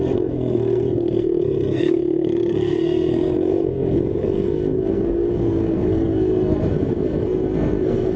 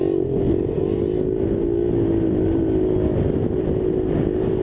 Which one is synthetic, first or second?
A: first